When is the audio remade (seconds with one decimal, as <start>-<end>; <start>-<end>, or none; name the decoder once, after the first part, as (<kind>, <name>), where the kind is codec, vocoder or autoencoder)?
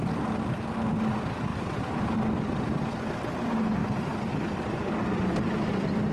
3.8-6.1 (vocoder, BigVGAN v2)